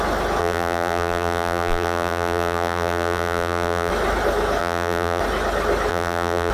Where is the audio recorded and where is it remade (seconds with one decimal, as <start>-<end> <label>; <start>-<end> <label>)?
0.0-0.4 recorded; 0.4-3.9 remade; 3.9-4.6 recorded; 4.6-5.2 remade; 5.2-5.9 recorded; 5.9-6.5 remade